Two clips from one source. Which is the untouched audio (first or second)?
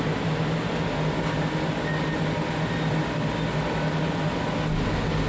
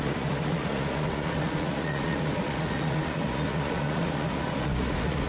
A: first